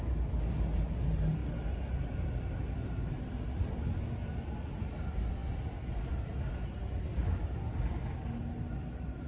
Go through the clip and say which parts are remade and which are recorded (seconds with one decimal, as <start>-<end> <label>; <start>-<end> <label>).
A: 0.0-9.3 recorded